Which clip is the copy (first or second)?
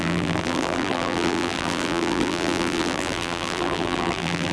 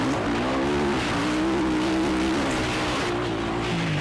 first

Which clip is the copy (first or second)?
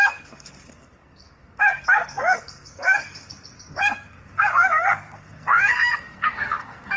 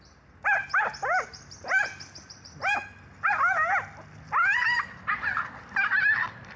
first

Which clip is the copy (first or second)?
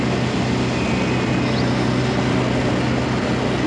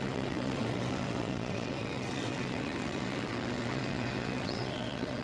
second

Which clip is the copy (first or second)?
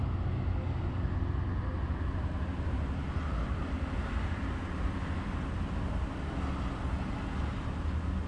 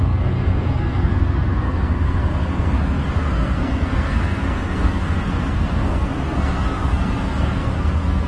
second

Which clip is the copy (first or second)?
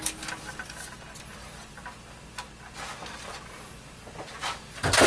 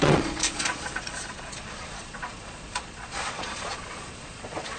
second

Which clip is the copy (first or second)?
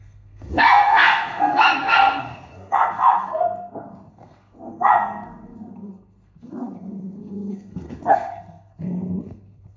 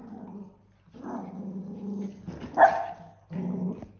first